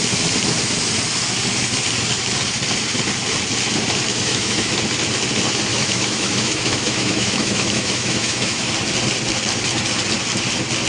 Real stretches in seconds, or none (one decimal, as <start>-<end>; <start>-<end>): 0.0-4.1; 4.7-5.7; 8.7-10.9